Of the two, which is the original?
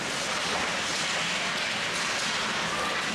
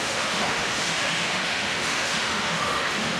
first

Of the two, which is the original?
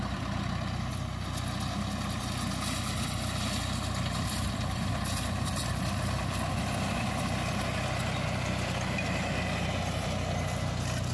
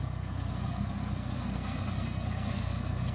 first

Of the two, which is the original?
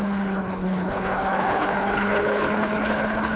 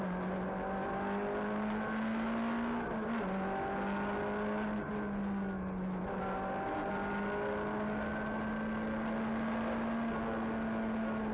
second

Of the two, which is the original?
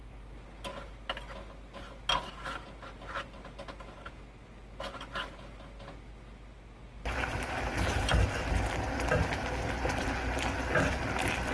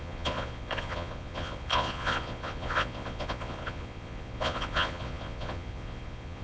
first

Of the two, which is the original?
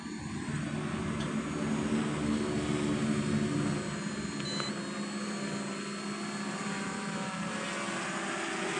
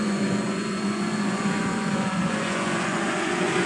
first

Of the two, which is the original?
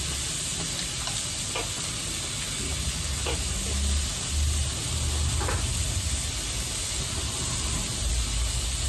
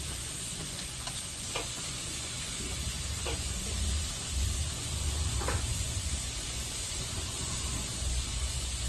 first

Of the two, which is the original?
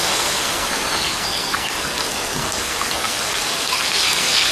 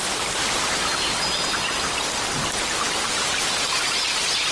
second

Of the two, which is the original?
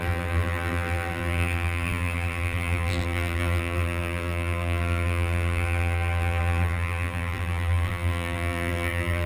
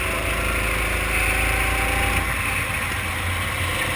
second